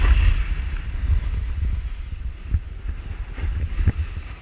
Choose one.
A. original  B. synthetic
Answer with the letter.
A